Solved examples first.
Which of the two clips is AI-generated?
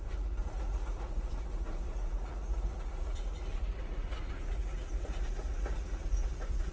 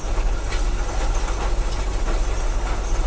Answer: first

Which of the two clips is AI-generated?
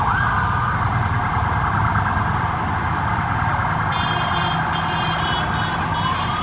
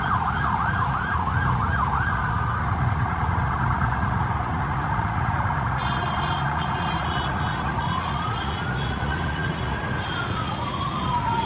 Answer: second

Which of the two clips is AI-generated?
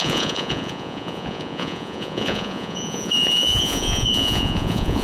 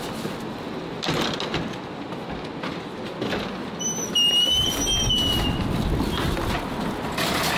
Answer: first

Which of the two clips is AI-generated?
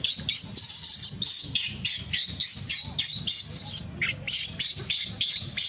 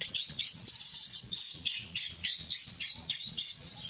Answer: second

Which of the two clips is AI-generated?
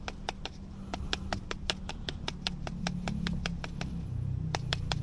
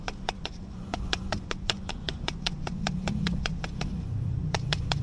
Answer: second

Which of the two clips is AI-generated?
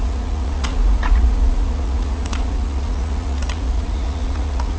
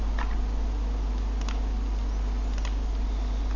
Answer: first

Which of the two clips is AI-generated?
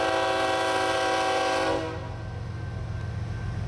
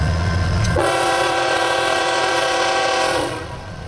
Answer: second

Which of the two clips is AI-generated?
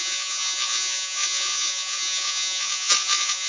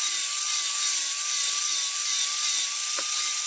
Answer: first